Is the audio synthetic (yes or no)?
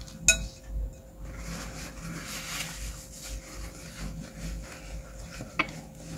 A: no